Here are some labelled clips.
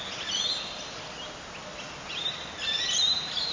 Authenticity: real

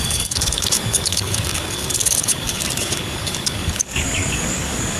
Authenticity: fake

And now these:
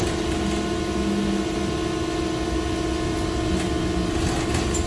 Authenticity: real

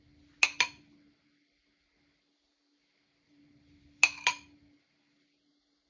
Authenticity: real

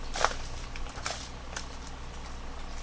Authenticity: real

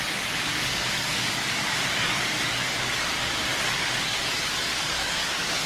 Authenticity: fake